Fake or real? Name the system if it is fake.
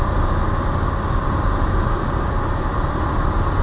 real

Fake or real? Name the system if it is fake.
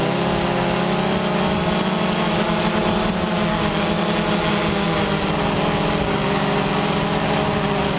real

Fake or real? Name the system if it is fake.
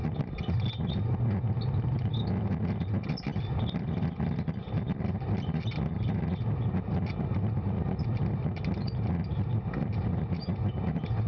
real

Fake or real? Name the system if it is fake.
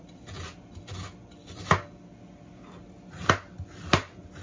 real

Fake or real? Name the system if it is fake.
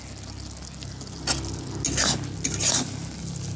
real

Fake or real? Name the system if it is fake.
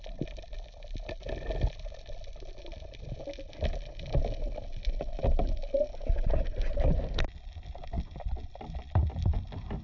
real